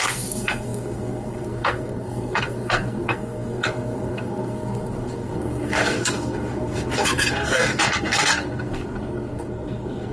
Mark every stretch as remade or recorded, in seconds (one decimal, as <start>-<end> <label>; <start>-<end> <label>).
0.0-10.1 remade